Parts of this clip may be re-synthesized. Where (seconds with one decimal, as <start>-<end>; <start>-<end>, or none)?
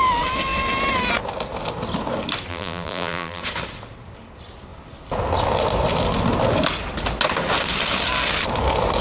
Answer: 2.5-3.4